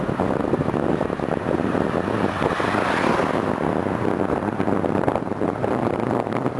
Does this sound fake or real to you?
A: real